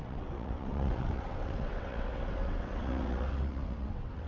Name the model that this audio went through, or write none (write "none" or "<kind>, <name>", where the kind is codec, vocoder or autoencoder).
vocoder, WaveNeXt